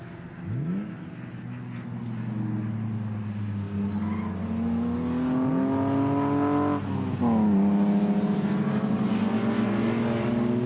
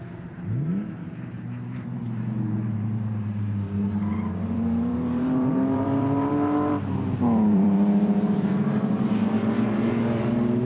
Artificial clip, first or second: second